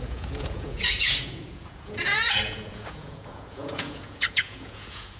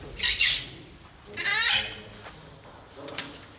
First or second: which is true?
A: second